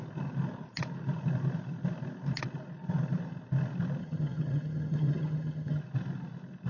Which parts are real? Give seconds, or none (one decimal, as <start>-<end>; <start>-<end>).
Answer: 0.0-4.0; 5.8-6.7